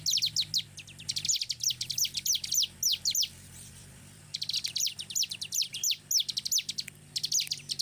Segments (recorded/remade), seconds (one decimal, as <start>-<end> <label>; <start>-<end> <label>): 0.0-2.9 recorded; 2.9-6.1 remade; 6.1-7.8 recorded